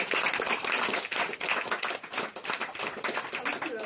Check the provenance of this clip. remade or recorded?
recorded